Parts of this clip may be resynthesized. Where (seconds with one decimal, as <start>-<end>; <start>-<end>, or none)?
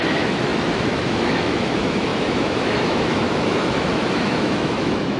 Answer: 0.0-5.2